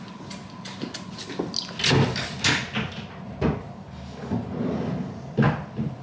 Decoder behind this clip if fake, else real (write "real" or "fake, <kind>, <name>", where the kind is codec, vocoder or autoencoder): real